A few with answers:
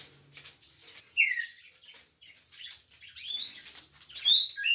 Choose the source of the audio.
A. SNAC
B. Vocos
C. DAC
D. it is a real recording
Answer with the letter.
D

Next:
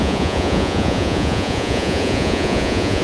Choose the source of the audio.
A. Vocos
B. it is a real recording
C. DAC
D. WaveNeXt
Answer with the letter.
A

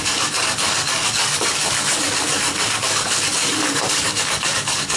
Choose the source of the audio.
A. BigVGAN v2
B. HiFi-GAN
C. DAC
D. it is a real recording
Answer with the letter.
C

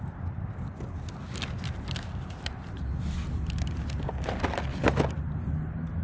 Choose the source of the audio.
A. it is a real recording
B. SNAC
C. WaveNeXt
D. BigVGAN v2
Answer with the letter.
A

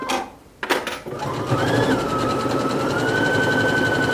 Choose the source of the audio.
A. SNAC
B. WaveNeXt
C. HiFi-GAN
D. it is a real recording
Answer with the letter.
D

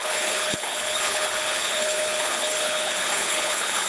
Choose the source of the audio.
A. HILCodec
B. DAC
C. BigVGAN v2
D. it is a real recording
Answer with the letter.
A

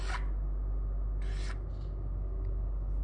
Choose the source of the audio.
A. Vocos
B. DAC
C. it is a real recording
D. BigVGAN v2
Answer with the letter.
C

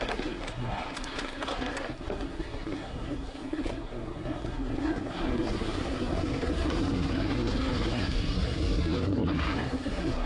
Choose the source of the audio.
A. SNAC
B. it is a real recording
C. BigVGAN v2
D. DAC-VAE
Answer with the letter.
A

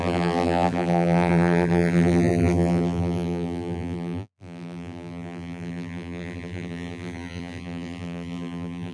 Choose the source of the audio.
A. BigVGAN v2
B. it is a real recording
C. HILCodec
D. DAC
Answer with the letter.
A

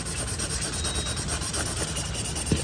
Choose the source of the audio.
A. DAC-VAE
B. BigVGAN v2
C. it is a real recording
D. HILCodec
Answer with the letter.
C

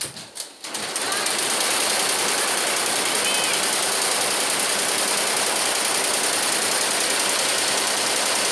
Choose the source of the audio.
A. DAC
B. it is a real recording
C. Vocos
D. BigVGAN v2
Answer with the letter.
B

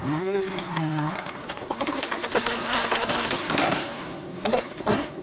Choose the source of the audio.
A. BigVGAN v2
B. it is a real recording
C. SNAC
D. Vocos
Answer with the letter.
C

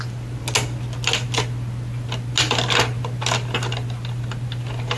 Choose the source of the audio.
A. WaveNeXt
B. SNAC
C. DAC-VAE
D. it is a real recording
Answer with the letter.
D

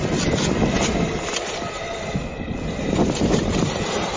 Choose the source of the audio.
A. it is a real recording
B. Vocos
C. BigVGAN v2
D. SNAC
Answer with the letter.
A